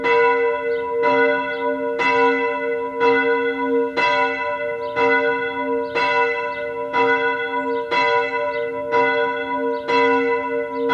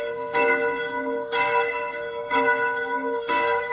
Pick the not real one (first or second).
second